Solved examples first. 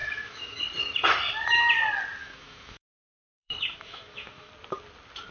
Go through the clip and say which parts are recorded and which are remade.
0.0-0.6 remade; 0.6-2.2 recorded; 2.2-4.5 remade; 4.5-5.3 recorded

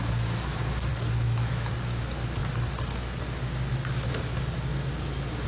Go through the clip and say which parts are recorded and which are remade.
0.0-0.9 recorded; 0.9-1.7 remade; 1.7-5.5 recorded

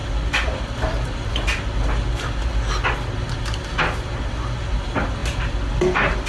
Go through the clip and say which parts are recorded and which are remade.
0.0-6.3 recorded